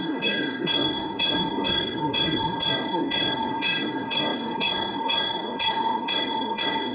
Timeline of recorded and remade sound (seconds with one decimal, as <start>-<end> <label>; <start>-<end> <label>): 0.0-6.9 remade